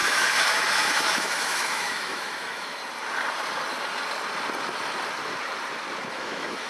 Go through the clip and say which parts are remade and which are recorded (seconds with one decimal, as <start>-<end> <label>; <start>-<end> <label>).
0.0-2.8 remade; 2.8-6.1 recorded; 6.1-6.7 remade